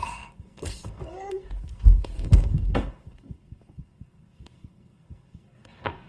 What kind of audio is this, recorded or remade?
remade